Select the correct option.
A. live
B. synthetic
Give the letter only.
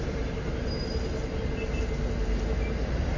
A